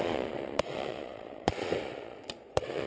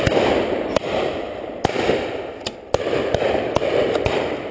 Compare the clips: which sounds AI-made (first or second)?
first